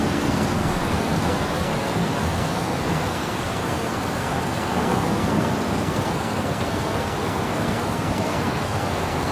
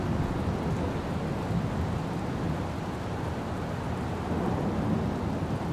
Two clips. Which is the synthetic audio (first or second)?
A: first